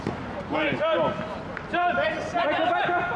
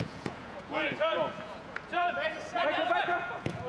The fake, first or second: second